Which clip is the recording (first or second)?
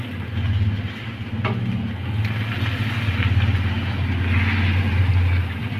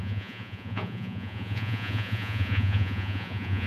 first